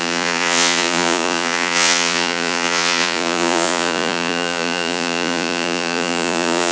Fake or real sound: fake